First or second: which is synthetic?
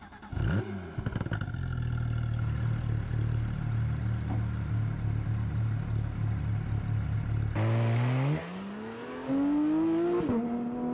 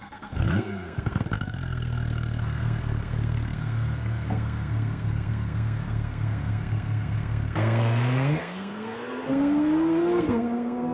second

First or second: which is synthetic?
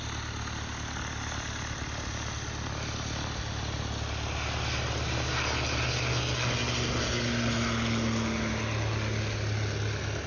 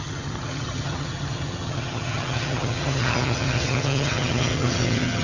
second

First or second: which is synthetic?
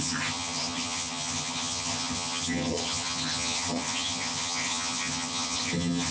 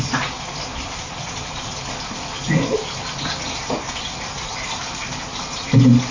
first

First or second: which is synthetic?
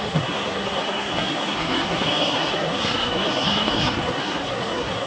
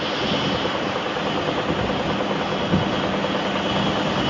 first